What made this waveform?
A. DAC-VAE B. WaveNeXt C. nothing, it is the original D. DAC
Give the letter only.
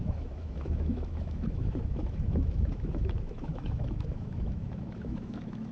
A